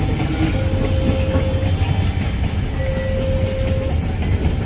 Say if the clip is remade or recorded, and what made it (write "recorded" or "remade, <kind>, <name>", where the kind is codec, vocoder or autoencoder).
recorded